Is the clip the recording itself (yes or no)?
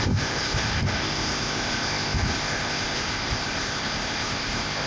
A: no